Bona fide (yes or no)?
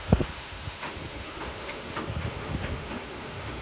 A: no